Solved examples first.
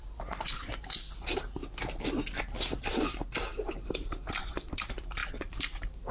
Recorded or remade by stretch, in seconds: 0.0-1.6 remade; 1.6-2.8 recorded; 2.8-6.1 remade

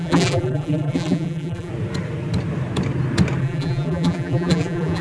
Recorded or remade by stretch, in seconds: 0.0-1.7 remade; 1.7-3.4 recorded; 3.4-5.0 remade

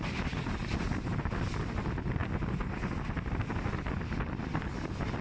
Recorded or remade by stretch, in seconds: 0.0-5.2 recorded

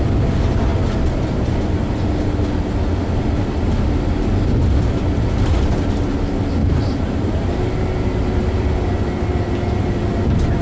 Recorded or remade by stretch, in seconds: 0.0-6.6 recorded; 6.6-7.6 remade; 7.6-10.6 recorded

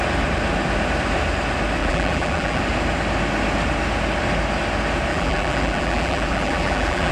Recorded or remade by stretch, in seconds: 0.0-1.8 recorded; 1.8-2.6 remade; 2.6-5.1 recorded; 5.1-7.1 remade

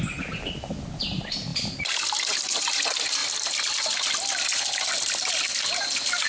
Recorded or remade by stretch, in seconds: 0.0-1.5 recorded; 1.5-2.0 remade; 2.0-6.3 recorded

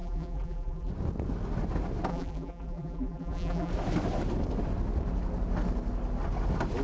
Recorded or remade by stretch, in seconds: 0.0-0.9 remade; 0.9-2.1 recorded; 2.1-3.7 remade; 3.7-6.8 recorded

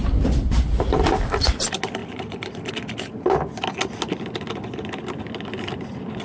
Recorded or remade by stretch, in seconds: 0.0-2.0 recorded; 2.0-2.7 remade; 2.7-6.2 recorded